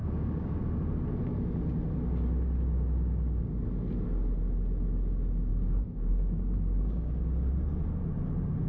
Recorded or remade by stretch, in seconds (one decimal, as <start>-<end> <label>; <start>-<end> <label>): 0.0-0.6 remade; 0.6-5.5 recorded; 5.5-7.5 remade; 7.5-8.7 recorded